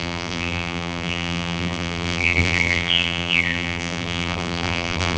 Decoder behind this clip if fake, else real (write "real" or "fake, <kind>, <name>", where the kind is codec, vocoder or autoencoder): fake, vocoder, BigVGAN v2